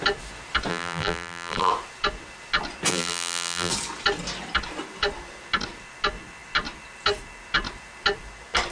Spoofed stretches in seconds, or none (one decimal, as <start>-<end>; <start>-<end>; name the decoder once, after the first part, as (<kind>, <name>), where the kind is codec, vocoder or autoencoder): 0.7-1.7 (vocoder, BigVGAN v2); 2.9-3.7